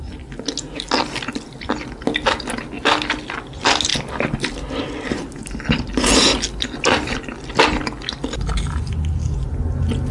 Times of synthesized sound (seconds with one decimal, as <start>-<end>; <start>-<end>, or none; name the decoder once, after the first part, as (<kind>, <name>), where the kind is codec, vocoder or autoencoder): none